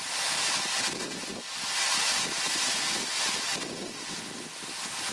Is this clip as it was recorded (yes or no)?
yes